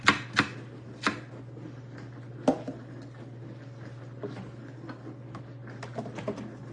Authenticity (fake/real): real